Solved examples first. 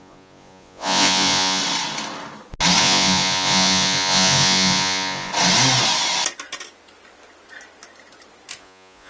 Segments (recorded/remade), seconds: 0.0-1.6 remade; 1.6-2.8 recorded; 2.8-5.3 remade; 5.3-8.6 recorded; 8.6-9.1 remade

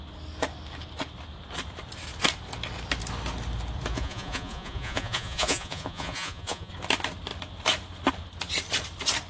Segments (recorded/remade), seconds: 0.0-3.9 recorded; 3.9-6.7 remade; 6.7-9.3 recorded

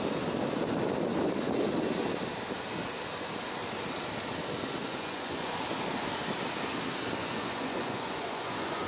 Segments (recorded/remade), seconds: 0.0-4.8 recorded; 4.8-5.6 remade; 5.6-7.2 recorded; 7.2-8.9 remade

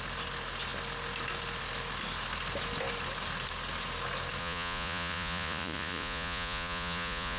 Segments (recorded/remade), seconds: 0.0-4.4 recorded; 4.4-7.4 remade

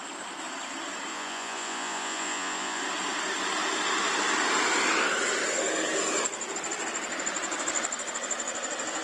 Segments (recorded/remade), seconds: 0.0-1.1 recorded; 1.1-2.8 remade; 2.8-9.0 recorded